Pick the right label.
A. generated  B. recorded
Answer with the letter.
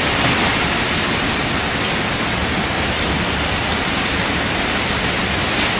A